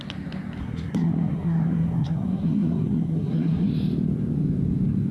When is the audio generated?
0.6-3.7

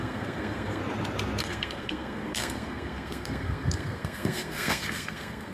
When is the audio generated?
0.0-0.8; 1.4-5.5